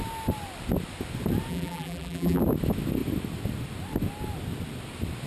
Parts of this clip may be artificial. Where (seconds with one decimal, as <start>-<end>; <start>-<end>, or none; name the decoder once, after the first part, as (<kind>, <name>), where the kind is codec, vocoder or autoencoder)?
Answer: 1.5-2.4 (vocoder, BigVGAN v2)